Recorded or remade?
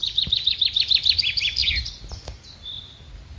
recorded